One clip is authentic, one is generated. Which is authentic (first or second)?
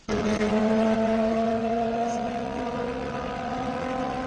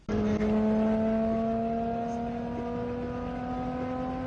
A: second